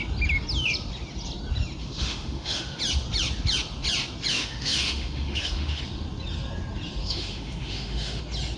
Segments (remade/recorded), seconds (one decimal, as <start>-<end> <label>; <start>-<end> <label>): 0.0-1.8 recorded; 1.8-2.8 remade; 2.8-4.3 recorded; 4.3-5.8 remade; 5.8-7.0 recorded; 7.0-8.2 remade; 8.2-8.6 recorded